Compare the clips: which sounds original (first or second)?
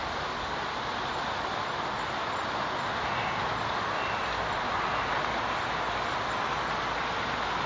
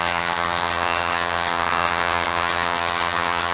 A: first